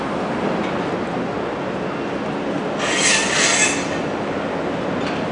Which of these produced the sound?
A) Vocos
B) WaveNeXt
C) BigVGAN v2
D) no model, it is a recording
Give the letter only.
D